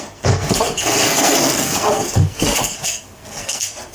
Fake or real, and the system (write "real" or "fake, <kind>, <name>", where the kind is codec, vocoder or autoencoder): fake, codec, SNAC